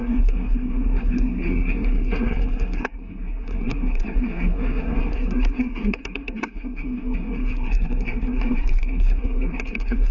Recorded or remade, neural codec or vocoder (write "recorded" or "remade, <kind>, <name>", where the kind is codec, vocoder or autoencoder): remade, codec, SNAC